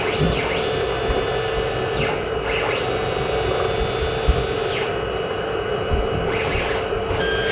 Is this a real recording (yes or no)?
yes